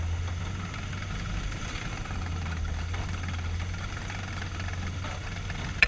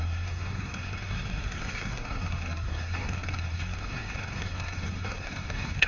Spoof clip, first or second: second